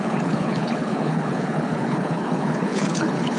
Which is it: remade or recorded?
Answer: remade